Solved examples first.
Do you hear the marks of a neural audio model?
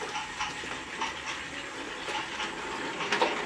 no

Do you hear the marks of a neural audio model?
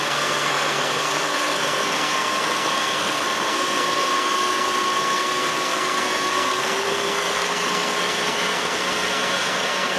yes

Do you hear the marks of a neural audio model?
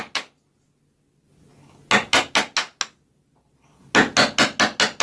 no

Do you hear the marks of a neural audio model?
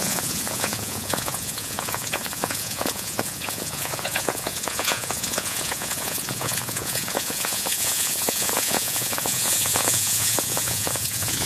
yes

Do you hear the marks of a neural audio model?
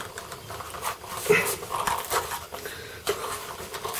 no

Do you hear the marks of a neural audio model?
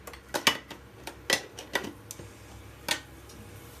no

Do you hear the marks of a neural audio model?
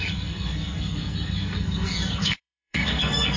yes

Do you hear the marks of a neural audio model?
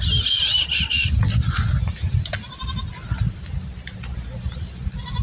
no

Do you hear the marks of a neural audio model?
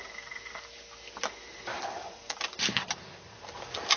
no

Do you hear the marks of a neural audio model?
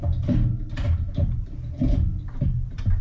no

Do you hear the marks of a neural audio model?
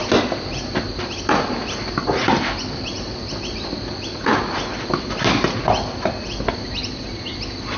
no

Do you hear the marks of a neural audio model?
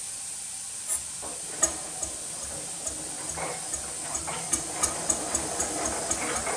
no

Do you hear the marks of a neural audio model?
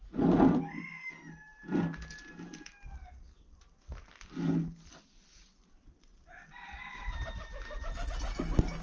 no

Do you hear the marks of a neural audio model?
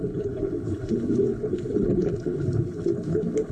yes